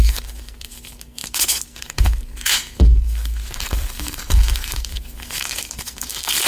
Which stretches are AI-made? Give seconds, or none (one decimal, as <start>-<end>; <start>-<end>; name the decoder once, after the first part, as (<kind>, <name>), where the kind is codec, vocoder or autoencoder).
0.0-6.5 (codec, SNAC)